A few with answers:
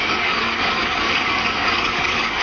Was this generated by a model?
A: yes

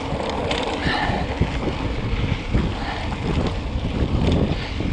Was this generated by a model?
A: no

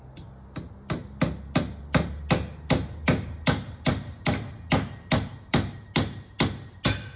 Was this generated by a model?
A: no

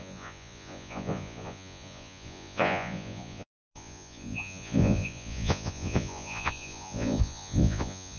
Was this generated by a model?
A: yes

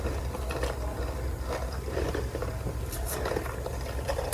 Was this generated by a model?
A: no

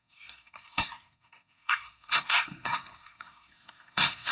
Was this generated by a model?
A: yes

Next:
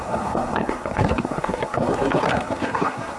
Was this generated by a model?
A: yes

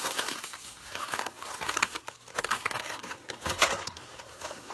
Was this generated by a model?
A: yes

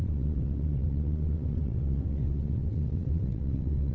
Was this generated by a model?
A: yes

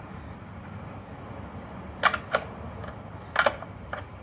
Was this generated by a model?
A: no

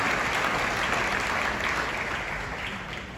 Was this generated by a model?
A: no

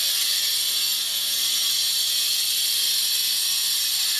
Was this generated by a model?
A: no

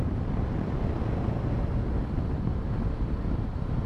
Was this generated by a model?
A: no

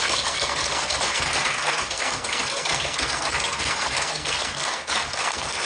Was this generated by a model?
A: yes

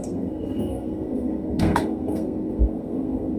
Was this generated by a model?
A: yes